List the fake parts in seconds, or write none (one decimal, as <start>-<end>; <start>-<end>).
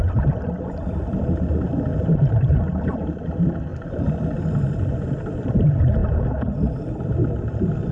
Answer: 0.0-3.7; 4.8-7.9